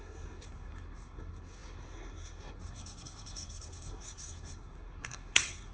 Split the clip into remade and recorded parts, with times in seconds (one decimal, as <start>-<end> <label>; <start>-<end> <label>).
0.0-5.7 remade